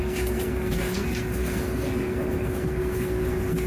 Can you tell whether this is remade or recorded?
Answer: remade